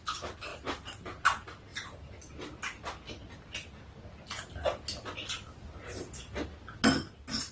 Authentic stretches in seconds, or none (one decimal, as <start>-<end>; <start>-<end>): 0.0-7.5